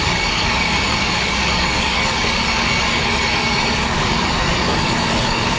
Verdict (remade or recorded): remade